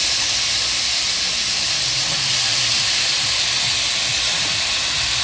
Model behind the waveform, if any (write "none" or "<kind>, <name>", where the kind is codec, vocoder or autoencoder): none